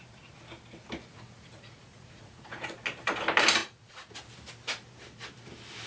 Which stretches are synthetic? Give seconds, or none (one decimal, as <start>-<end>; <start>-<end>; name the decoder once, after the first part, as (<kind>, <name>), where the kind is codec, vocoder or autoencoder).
1.1-2.7 (vocoder, Vocos); 3.6-4.2